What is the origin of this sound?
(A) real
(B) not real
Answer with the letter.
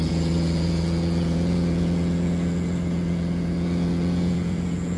B